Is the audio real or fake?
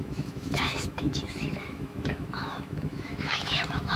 fake